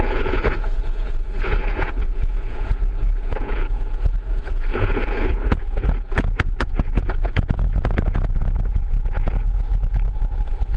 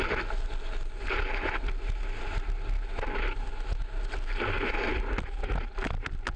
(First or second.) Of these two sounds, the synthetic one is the first